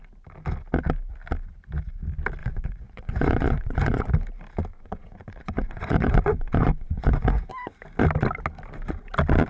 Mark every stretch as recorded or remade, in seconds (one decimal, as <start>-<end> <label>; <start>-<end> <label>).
0.0-2.4 recorded; 2.4-4.1 remade; 4.1-4.7 recorded; 4.7-7.5 remade; 7.5-9.5 recorded